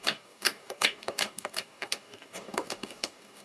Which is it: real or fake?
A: fake